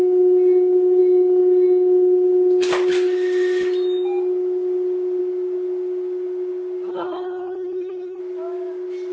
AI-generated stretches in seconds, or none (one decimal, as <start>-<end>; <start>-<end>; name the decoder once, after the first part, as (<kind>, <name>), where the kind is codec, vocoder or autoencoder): 6.9-8.2 (codec, SNAC)